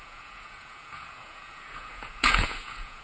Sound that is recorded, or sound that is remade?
remade